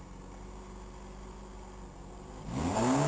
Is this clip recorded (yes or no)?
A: yes